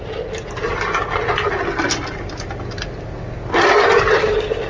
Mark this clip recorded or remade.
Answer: recorded